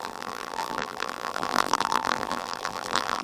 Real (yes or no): no